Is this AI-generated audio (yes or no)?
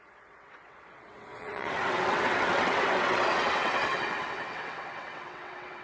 yes